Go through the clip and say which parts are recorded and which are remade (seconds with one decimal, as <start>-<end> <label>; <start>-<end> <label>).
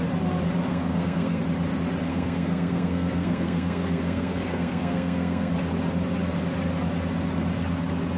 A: 0.0-0.7 recorded; 0.7-1.4 remade; 1.4-2.1 recorded; 2.1-5.5 remade; 5.5-8.2 recorded